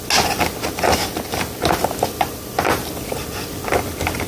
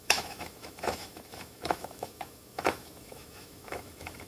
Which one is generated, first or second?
second